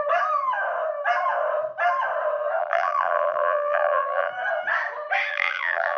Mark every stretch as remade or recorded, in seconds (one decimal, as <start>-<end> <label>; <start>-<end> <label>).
0.0-2.6 recorded; 2.6-4.3 remade; 4.3-5.3 recorded; 5.3-6.0 remade